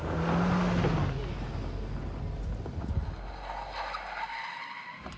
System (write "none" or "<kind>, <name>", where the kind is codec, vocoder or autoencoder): none